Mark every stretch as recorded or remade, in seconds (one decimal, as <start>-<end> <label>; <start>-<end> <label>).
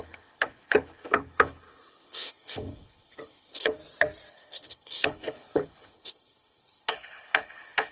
0.0-3.8 remade; 3.8-4.3 recorded; 4.3-7.9 remade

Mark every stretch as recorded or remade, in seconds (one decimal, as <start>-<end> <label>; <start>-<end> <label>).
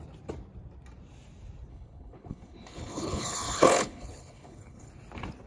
0.0-1.7 recorded; 1.7-4.9 remade; 4.9-5.5 recorded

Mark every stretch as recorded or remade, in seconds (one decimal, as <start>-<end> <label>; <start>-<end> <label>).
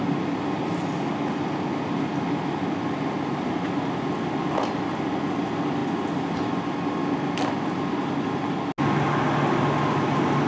0.0-10.5 recorded